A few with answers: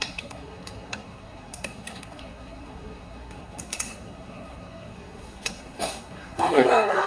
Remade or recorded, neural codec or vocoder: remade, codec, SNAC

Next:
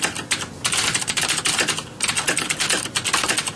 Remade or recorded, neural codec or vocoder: recorded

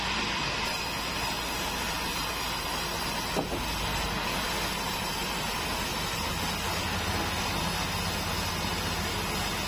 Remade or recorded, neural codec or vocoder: recorded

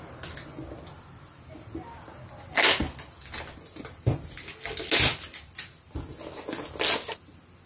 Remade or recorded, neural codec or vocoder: recorded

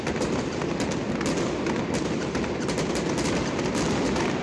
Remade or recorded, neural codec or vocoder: recorded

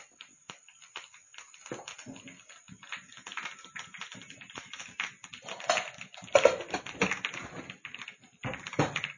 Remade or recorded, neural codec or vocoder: recorded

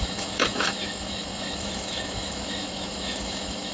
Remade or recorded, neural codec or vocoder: remade, autoencoder, DAC-VAE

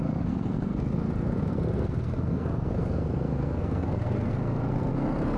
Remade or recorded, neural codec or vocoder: remade, codec, SNAC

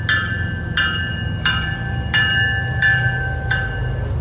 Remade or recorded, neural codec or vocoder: recorded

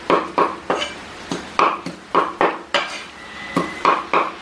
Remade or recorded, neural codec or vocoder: recorded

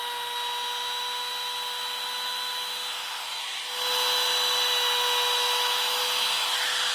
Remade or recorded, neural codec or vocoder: recorded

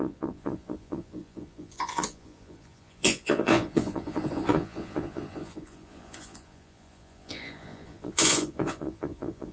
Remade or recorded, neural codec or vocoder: remade, vocoder, Vocos